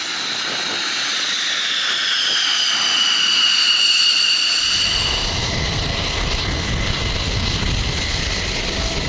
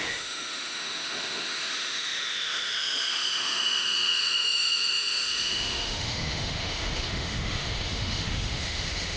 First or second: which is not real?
second